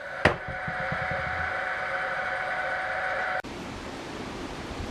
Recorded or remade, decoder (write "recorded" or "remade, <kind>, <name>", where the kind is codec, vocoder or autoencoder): remade, vocoder, BigVGAN v2